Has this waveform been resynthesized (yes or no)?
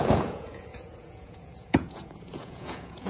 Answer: yes